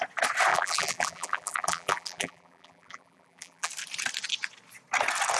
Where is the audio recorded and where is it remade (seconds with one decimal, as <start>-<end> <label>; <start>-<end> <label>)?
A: 0.0-0.5 recorded; 0.5-3.7 remade; 3.7-5.4 recorded